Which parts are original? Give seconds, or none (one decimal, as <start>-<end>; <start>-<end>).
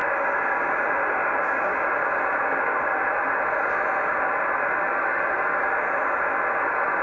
0.0-7.0